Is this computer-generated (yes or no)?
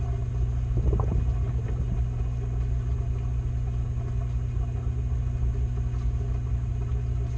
no